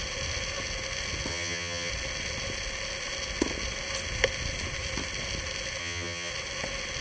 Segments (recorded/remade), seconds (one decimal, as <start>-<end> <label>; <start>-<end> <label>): 0.0-1.3 recorded; 1.3-1.9 remade; 1.9-5.8 recorded; 5.8-6.3 remade; 6.3-7.0 recorded